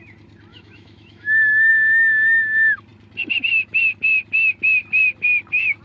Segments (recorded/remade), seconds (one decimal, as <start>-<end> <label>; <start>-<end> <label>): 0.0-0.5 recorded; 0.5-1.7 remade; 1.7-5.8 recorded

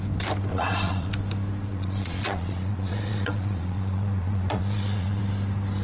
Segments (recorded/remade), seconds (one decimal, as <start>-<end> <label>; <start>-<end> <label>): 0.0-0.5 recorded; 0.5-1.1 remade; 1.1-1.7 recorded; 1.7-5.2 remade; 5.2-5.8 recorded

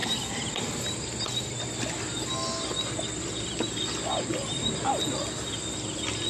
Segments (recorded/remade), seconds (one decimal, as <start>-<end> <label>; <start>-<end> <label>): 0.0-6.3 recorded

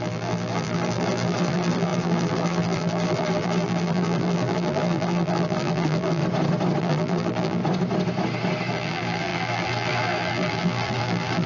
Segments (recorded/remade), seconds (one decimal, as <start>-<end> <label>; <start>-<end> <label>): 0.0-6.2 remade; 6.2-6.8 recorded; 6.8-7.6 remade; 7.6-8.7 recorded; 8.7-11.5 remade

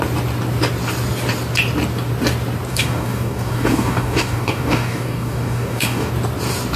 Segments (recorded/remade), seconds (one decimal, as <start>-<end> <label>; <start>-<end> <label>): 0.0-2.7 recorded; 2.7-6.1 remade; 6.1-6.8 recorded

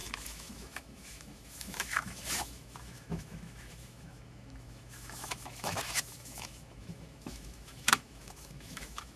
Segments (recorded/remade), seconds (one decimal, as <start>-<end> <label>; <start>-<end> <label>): 0.0-9.2 remade

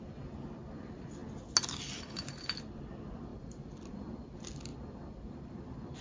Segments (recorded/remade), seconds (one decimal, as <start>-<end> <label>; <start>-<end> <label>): 0.0-3.3 recorded; 3.3-4.0 remade; 4.0-6.0 recorded

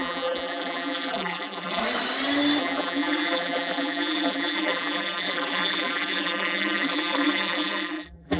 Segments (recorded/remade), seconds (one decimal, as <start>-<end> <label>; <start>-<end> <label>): 0.0-1.8 remade; 1.8-2.6 recorded; 2.6-8.4 remade